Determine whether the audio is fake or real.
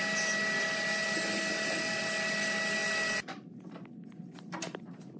real